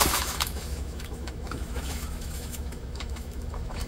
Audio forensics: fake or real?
fake